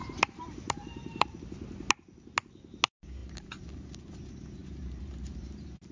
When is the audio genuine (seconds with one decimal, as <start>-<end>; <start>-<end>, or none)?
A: 1.4-3.2; 4.0-4.6